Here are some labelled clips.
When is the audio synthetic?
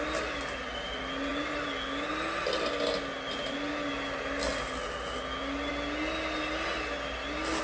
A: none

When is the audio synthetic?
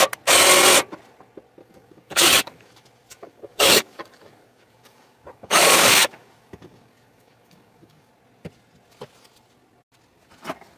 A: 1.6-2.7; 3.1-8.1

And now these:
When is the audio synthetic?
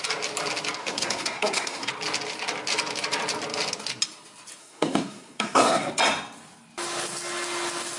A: 0.8-1.9; 4.6-5.9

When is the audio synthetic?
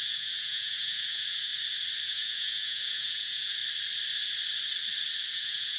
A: 0.0-1.5; 2.0-3.6; 5.3-5.8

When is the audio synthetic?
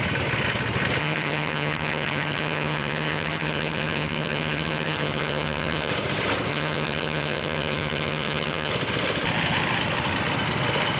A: 1.0-5.9; 6.5-8.7